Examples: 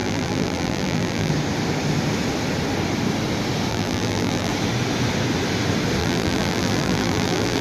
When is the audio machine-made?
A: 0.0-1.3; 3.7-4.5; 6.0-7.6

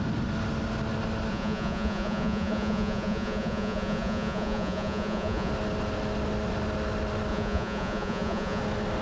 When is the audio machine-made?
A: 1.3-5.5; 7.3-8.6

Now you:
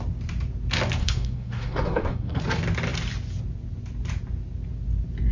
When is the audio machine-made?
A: 1.0-2.4

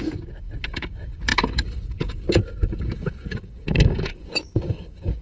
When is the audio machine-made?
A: 0.0-5.2